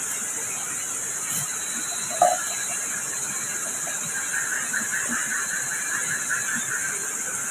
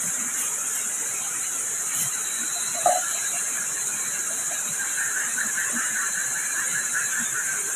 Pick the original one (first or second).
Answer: first